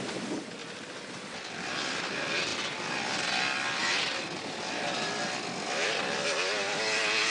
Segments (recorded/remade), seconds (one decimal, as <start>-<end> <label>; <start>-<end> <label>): 0.0-7.3 recorded